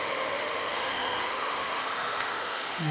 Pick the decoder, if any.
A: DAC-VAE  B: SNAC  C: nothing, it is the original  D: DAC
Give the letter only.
A